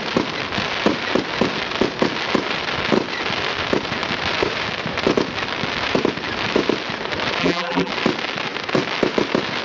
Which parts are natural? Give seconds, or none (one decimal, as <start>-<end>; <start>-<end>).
0.0-7.4; 7.9-9.6